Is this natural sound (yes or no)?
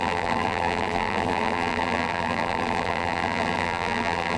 no